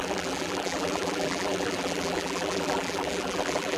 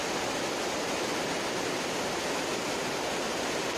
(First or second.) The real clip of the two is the second